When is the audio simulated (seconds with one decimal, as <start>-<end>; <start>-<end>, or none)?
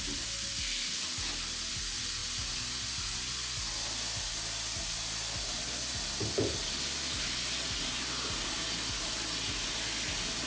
none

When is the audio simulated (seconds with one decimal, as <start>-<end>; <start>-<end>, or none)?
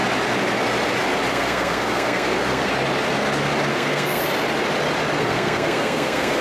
1.3-2.7; 3.7-4.2; 5.2-6.4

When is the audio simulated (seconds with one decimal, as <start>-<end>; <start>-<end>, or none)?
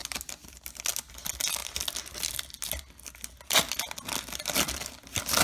none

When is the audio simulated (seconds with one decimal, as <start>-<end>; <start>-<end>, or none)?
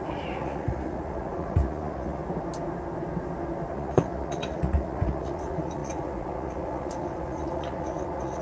0.0-2.2; 3.7-8.4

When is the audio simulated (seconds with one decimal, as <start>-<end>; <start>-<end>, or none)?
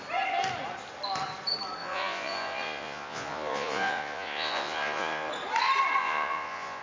1.8-5.3; 6.0-6.8